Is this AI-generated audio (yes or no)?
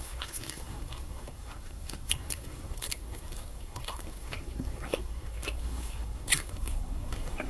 yes